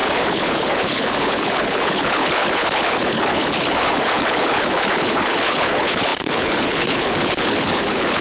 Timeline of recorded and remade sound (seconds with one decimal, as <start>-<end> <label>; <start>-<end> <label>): 0.0-8.2 remade